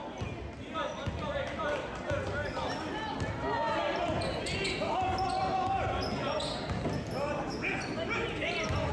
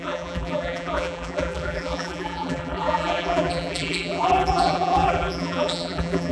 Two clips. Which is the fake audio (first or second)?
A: second